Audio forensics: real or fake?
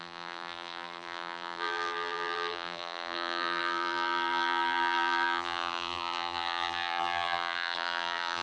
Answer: fake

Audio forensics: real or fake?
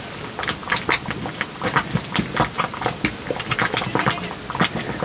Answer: real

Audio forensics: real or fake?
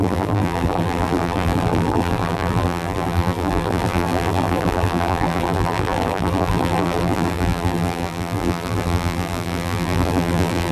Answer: fake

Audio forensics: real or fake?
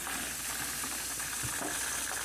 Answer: real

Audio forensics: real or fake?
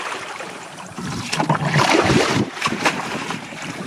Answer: fake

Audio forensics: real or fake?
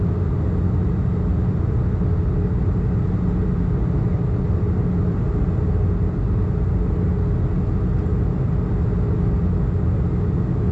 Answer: real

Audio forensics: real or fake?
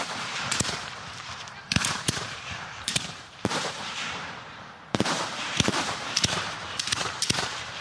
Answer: fake